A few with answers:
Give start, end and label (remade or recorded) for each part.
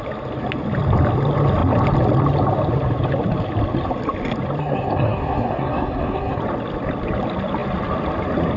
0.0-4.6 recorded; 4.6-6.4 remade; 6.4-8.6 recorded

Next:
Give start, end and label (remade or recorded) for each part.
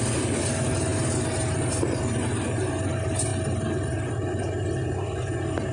0.0-5.7 recorded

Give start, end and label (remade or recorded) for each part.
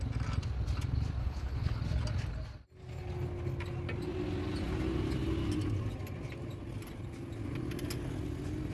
0.0-1.2 recorded; 1.2-1.8 remade; 1.8-8.7 recorded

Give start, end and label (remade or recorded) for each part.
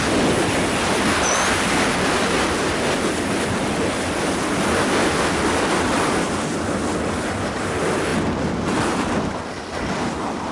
0.0-10.5 recorded